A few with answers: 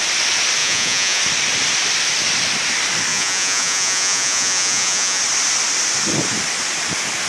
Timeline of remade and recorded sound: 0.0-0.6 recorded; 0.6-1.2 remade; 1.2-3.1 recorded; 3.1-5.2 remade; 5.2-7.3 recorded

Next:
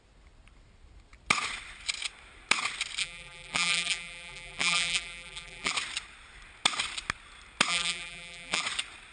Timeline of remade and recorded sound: 0.0-3.0 recorded; 3.0-5.7 remade; 5.7-7.7 recorded; 7.7-8.6 remade; 8.6-9.1 recorded

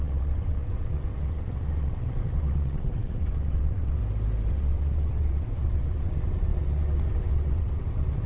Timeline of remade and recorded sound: 0.0-4.0 remade; 4.0-4.5 recorded; 4.5-8.3 remade

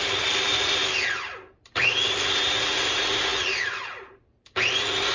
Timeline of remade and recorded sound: 0.0-5.1 recorded

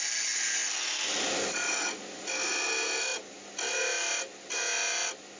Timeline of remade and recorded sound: 0.0-5.4 recorded

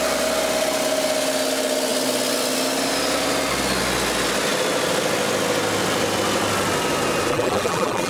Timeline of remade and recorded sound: 0.0-7.3 recorded; 7.3-8.1 remade

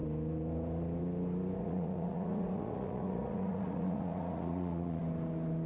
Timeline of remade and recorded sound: 0.0-1.6 recorded; 1.6-5.0 remade; 5.0-5.7 recorded